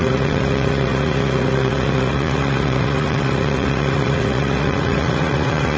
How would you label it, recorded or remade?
remade